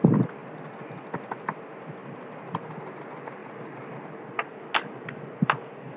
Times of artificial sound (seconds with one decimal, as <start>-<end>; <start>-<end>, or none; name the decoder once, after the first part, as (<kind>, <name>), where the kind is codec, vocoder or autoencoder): none